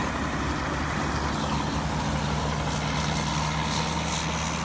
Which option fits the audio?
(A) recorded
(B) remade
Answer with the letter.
A